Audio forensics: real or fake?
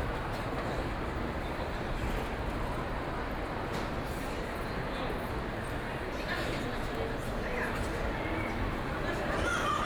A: real